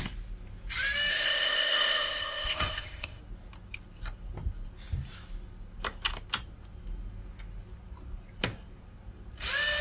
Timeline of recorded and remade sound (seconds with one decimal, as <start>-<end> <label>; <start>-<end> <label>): 0.0-1.1 recorded; 1.1-3.2 remade; 3.2-9.8 recorded